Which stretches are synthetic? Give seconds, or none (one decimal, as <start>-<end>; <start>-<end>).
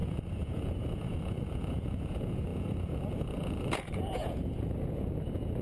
0.0-5.6